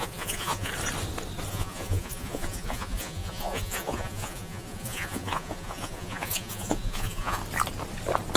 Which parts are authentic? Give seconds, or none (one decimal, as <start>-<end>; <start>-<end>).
0.7-1.5; 7.4-8.4